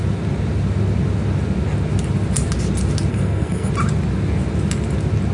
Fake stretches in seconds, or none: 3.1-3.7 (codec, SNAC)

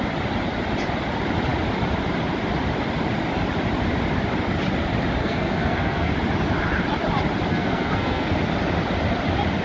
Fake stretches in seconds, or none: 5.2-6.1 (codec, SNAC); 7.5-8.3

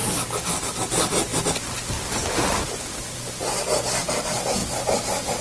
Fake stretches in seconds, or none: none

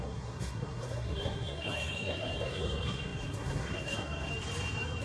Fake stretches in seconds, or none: 0.0-4.3 (codec, SNAC)

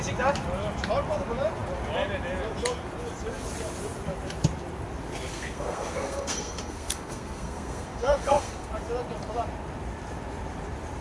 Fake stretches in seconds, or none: 5.3-8.7 (codec, SNAC)

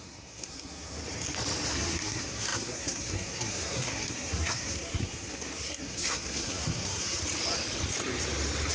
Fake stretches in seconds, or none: 0.0-1.0 (codec, SNAC); 1.7-7.2

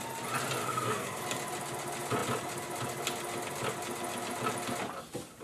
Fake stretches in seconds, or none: 0.6-1.2 (codec, SNAC)